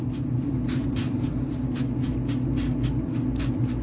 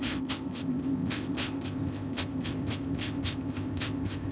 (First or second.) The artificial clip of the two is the second